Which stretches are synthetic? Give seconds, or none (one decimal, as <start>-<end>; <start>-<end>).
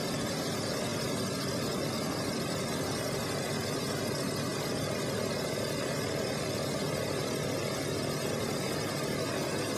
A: none